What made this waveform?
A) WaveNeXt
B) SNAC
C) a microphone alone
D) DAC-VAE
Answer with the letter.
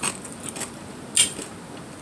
C